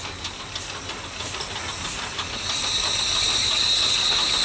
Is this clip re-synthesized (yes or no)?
no